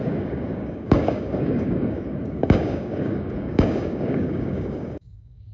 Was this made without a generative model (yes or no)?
no